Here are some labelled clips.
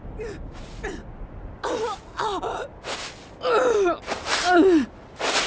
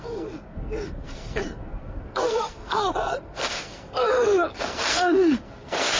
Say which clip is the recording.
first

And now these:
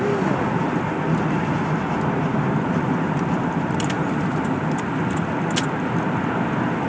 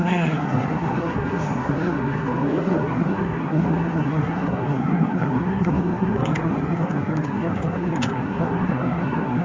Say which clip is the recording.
first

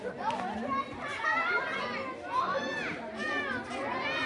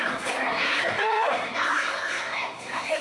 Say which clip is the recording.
first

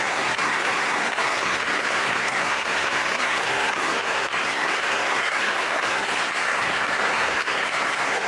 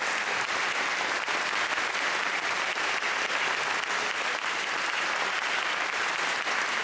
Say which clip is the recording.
second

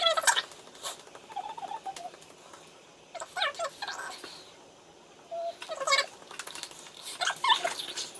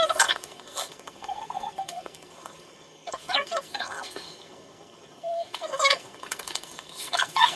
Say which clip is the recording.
first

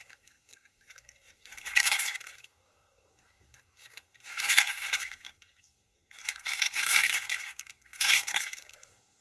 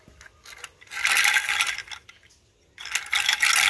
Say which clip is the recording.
second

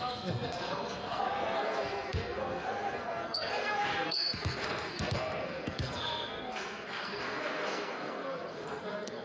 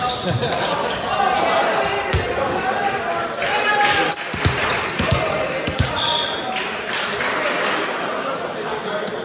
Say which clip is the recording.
second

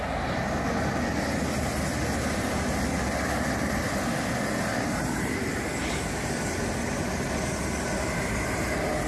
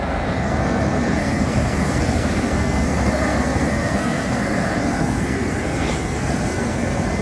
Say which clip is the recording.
first